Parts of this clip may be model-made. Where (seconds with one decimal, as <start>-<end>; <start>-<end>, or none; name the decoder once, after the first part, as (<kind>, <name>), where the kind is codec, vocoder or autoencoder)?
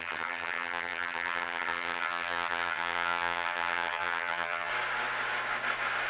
0.0-4.7 (vocoder, HiFi-GAN)